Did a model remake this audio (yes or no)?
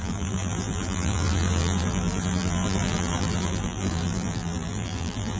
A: yes